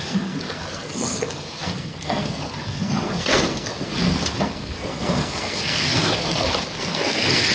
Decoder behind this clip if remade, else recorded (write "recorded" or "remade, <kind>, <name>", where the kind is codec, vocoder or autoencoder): remade, codec, SNAC